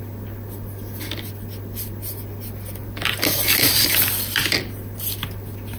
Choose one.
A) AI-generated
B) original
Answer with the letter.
B